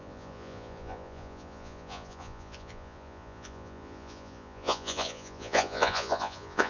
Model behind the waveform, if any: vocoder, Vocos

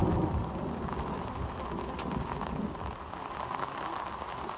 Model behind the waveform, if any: none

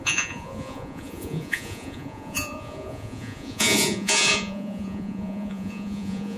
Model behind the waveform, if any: vocoder, Vocos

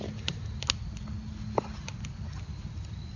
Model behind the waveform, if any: none